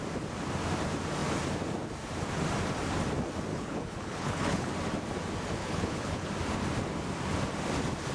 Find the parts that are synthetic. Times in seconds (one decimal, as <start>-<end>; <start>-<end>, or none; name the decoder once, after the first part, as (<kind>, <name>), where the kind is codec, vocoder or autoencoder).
3.5-4.7 (codec, HILCodec); 5.6-6.3